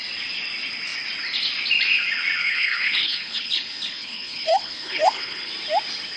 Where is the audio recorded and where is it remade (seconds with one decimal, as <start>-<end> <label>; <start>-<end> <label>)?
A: 0.0-2.4 recorded; 2.4-5.5 remade; 5.5-6.2 recorded